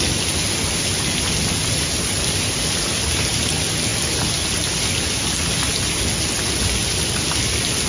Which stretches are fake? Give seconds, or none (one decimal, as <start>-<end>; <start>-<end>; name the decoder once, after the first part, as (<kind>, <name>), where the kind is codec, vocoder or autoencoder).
none